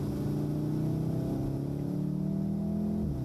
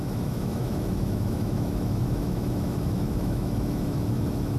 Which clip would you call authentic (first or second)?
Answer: first